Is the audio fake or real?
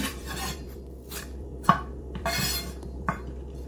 fake